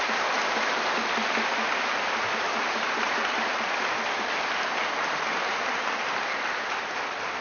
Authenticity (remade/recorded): remade